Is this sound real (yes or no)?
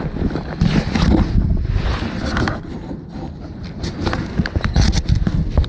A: yes